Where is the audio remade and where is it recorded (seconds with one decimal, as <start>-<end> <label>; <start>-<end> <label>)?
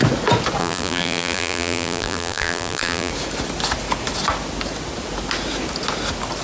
0.0-0.6 recorded; 0.6-3.1 remade; 3.1-6.4 recorded